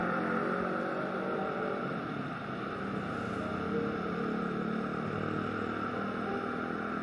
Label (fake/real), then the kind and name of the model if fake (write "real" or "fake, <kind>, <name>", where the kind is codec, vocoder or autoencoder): real